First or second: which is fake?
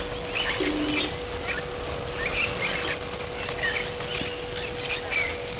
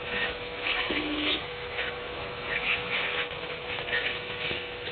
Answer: second